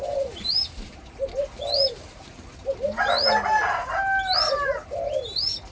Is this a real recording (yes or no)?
yes